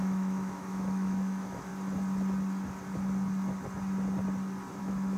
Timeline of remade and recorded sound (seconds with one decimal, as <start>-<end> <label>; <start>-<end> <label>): 0.0-1.7 remade; 1.7-4.8 recorded; 4.8-5.2 remade